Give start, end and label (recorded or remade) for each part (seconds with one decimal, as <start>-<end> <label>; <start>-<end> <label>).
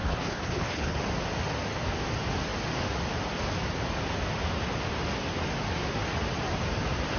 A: 0.0-1.0 remade; 1.0-7.2 recorded